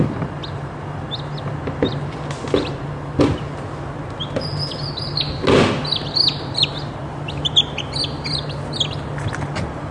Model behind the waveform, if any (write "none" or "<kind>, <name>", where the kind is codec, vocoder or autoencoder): none